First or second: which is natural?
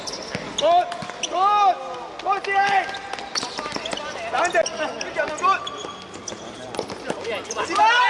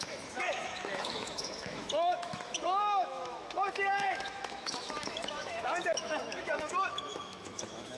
first